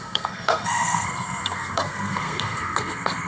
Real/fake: fake